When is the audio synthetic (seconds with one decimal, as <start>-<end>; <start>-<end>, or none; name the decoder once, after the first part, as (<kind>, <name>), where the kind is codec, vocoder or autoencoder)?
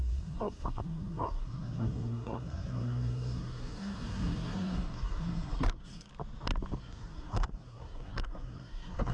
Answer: 0.0-6.1 (codec, SNAC); 6.8-9.1